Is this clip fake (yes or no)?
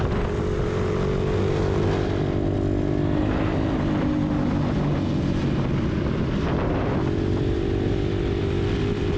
no